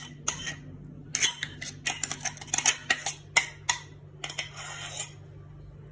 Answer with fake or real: real